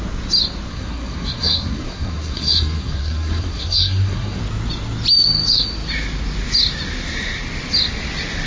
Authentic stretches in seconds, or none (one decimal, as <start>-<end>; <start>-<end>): 0.0-0.7; 4.4-8.5